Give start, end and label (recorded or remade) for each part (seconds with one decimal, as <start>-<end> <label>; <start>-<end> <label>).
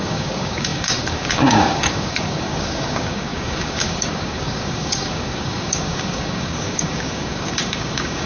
0.0-8.3 remade